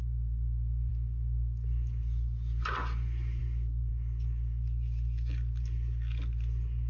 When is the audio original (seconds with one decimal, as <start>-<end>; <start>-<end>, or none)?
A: 0.0-6.9